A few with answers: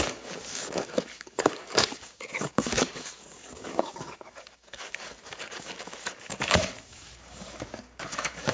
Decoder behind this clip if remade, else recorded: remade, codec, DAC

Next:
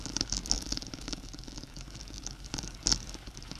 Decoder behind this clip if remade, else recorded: remade, codec, DAC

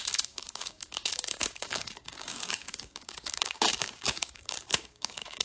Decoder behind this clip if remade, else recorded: remade, codec, DAC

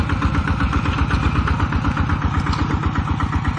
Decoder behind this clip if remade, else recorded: recorded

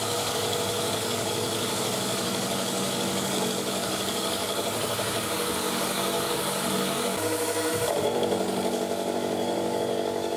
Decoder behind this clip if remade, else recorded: remade, codec, DAC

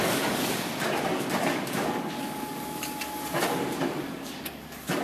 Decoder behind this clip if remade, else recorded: remade, codec, DAC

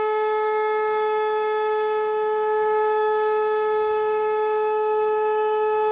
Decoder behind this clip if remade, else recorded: remade, codec, DAC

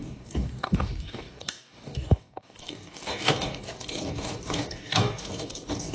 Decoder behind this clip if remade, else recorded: remade, codec, DAC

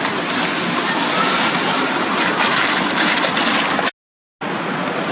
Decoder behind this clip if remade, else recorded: recorded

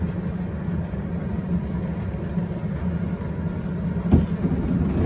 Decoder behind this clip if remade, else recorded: recorded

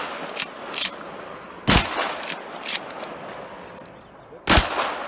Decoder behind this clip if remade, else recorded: recorded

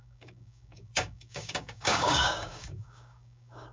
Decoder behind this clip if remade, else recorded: remade, codec, DAC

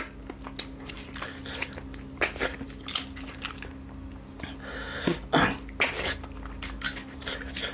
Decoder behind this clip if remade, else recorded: recorded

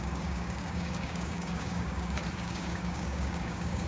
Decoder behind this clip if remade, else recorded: remade, codec, DAC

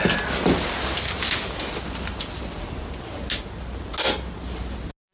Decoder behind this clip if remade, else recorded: recorded